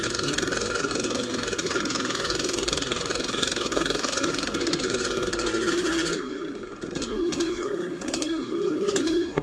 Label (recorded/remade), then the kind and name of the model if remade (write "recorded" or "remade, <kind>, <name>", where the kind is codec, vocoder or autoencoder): remade, codec, SNAC